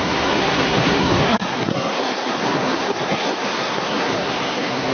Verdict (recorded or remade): remade